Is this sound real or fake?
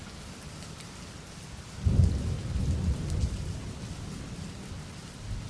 real